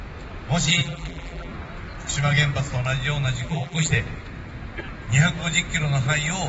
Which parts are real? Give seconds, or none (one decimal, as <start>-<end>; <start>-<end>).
0.0-0.7; 1.5-3.4; 3.9-6.5